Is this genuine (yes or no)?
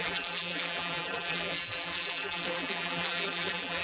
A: no